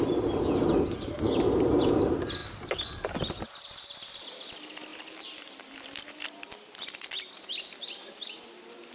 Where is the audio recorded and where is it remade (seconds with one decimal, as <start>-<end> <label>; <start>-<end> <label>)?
0.0-2.4 recorded; 2.4-3.6 remade; 3.6-4.9 recorded; 4.9-7.8 remade; 7.8-8.9 recorded